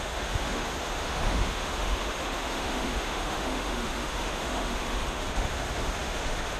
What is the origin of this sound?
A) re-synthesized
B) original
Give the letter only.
A